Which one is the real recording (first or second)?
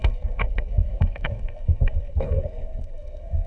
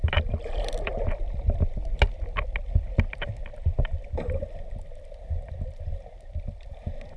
second